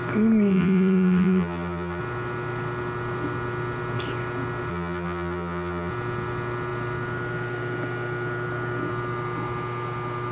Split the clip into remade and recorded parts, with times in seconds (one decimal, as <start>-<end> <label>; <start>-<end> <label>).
0.0-0.5 recorded; 0.5-2.0 remade; 2.0-4.7 recorded; 4.7-5.9 remade; 5.9-10.3 recorded

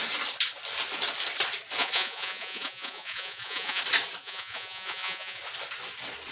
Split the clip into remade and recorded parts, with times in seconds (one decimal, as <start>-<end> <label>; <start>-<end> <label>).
0.0-1.8 recorded; 1.8-3.8 remade; 3.8-4.2 recorded; 4.2-5.4 remade; 5.4-6.3 recorded